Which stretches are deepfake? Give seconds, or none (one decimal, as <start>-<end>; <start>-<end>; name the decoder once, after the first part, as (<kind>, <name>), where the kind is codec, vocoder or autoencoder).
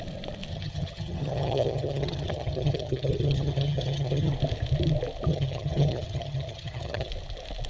0.5-4.3 (vocoder, HiFi-GAN); 5.3-7.1